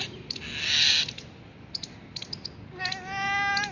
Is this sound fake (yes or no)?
no